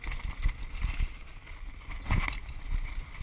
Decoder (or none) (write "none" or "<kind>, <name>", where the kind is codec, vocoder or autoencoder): none